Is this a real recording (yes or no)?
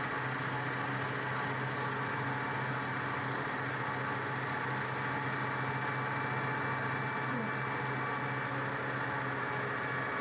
yes